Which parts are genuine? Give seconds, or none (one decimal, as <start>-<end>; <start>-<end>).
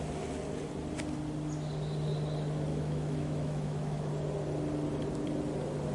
0.0-2.7; 4.1-5.9